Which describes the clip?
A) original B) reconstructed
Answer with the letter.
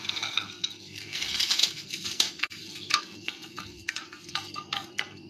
B